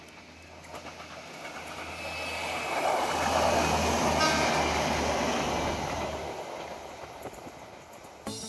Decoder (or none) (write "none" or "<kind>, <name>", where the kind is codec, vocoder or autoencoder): none